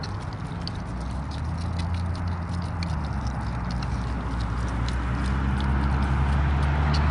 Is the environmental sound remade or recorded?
recorded